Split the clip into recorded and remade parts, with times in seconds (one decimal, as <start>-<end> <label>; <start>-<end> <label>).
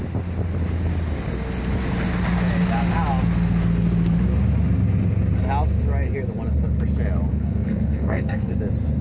0.0-7.3 recorded; 7.3-8.5 remade; 8.5-9.0 recorded